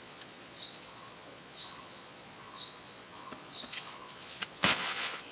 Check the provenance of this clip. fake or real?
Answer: fake